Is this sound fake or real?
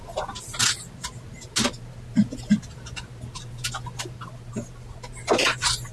real